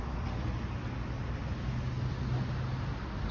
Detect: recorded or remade recorded